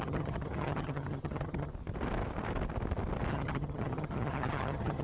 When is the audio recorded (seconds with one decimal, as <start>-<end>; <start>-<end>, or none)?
1.7-3.3